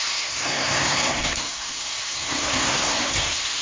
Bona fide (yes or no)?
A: no